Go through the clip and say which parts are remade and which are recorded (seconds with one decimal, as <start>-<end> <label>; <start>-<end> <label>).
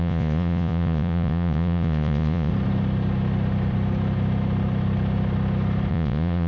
0.0-2.5 remade; 2.5-5.9 recorded; 5.9-6.5 remade